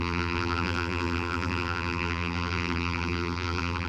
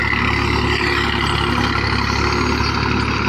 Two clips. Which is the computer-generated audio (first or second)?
first